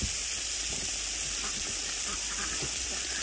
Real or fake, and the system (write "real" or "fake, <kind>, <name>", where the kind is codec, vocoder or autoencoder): real